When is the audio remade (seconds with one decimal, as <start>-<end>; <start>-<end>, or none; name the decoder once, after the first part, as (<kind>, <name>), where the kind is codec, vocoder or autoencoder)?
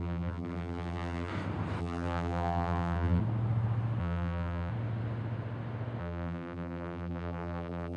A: 0.0-1.3 (vocoder, BigVGAN v2); 1.8-3.2; 4.0-4.7; 6.0-8.0